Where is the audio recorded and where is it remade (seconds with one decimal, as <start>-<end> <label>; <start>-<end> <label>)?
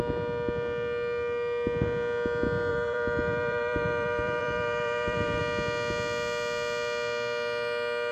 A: 0.0-2.7 recorded; 2.7-5.4 remade; 5.4-8.1 recorded